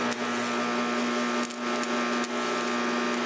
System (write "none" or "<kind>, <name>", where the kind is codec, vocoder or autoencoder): none